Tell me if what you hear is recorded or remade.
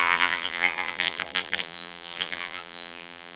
remade